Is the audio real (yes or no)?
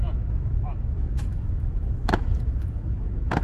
no